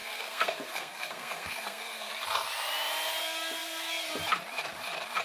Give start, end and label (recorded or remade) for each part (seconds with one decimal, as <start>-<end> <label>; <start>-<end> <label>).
0.0-2.1 remade; 2.1-5.2 recorded